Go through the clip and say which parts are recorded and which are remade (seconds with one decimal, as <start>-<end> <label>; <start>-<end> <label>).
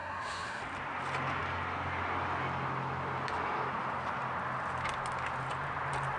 0.0-0.6 remade; 0.6-6.2 recorded